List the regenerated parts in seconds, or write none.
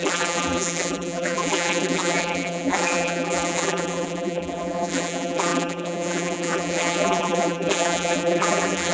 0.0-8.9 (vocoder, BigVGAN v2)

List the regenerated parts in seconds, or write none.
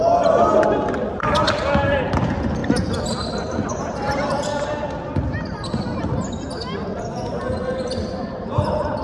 none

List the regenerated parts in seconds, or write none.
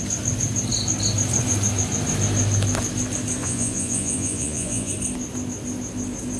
3.4-4.9 (vocoder, Vocos)